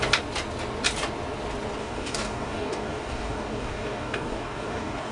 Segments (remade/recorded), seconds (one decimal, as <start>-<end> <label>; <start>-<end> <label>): 0.0-1.8 recorded; 1.8-5.1 remade

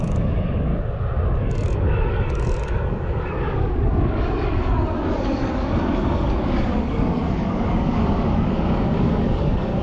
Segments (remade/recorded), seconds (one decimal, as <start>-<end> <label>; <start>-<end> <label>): 0.0-0.7 remade; 0.7-1.4 recorded; 1.4-9.8 remade

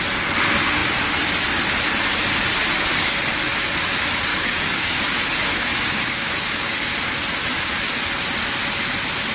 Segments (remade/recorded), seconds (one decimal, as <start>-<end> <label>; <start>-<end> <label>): 0.0-4.3 recorded; 4.3-5.0 remade; 5.0-5.5 recorded; 5.5-6.9 remade; 6.9-9.3 recorded

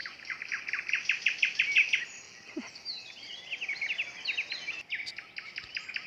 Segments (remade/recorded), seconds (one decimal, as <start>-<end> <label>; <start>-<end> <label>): 0.0-6.1 recorded